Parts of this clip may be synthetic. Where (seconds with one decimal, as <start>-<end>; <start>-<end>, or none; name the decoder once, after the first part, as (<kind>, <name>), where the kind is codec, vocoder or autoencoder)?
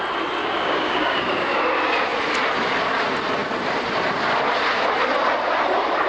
0.4-1.6 (codec, DAC)